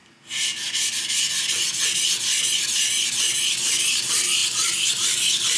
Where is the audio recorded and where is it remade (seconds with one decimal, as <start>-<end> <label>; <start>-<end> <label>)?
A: 0.0-4.4 recorded; 4.4-5.6 remade